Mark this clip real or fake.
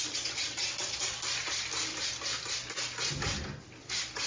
real